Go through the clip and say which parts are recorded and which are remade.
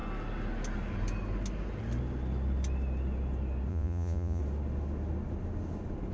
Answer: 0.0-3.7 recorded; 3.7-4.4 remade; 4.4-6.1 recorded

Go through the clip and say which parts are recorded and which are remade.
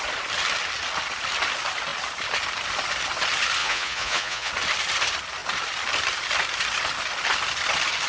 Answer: 0.0-3.6 recorded; 3.6-4.5 remade; 4.5-8.1 recorded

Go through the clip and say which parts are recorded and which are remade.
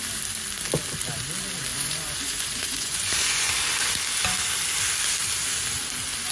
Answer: 0.0-1.7 recorded; 1.7-3.5 remade; 3.5-6.3 recorded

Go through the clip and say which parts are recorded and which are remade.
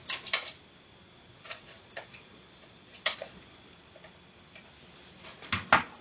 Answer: 0.0-1.3 recorded; 1.3-3.4 remade; 3.4-6.0 recorded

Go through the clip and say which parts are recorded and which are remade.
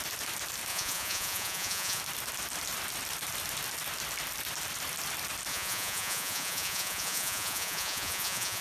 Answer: 0.0-0.7 recorded; 0.7-2.0 remade; 2.0-5.5 recorded; 5.5-8.6 remade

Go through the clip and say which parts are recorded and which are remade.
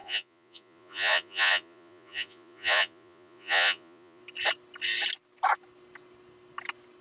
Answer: 0.0-4.2 remade; 4.2-7.0 recorded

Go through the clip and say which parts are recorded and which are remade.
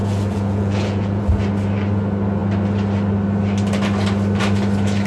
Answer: 0.0-1.2 remade; 1.2-5.1 recorded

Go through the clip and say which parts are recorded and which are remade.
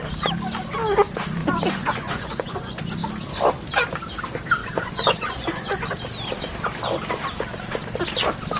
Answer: 0.0-1.4 recorded; 1.4-2.8 remade; 2.8-4.6 recorded; 4.6-5.9 remade; 5.9-8.6 recorded